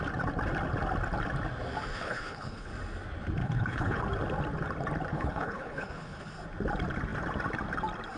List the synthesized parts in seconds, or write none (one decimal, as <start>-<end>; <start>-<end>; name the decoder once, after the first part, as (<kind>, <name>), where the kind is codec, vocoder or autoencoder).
1.9-2.7 (codec, HILCodec); 3.4-4.0; 5.1-6.3